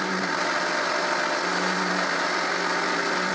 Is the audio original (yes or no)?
yes